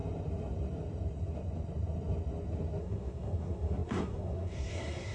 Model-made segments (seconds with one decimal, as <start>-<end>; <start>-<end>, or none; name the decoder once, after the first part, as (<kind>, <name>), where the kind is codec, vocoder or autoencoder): 2.8-5.1 (codec, SNAC)